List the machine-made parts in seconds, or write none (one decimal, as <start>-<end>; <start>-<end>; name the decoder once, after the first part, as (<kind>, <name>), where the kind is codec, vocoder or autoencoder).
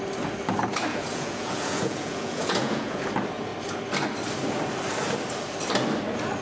0.9-3.1 (vocoder, Vocos)